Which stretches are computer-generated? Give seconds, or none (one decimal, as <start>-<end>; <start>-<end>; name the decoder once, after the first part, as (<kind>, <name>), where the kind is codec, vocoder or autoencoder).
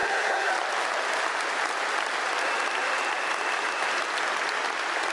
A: 0.0-0.5 (codec, SNAC)